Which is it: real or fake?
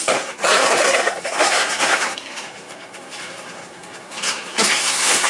fake